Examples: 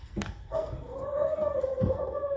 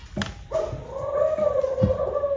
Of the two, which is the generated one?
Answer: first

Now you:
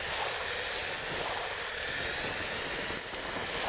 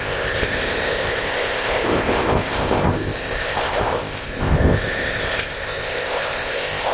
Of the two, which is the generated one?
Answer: second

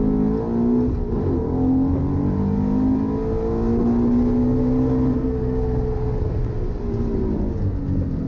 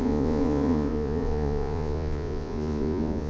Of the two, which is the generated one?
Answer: second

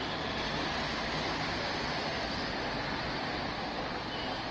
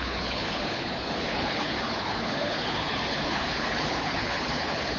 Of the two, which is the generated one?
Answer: second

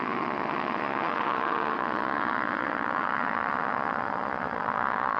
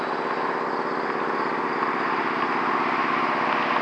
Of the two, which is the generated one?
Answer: first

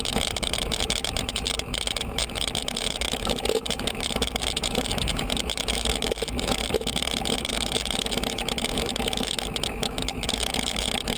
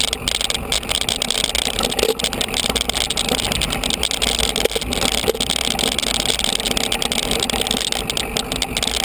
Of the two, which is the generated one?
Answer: first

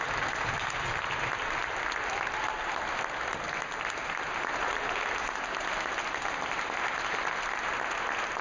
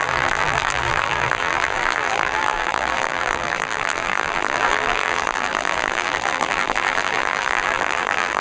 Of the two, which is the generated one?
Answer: second